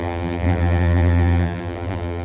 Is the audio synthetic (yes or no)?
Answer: yes